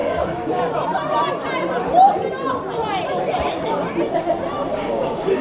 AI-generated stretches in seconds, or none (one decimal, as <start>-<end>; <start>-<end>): 0.0-0.6; 4.7-5.4